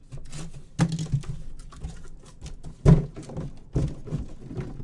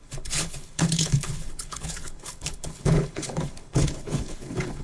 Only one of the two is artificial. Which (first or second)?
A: second